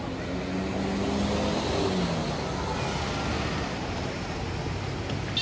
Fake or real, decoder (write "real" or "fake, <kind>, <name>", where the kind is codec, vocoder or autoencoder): real